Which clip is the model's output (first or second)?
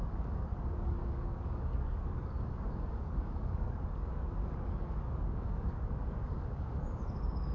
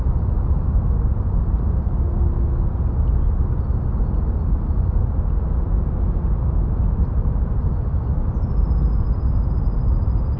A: first